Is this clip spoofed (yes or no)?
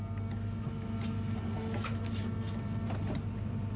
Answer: no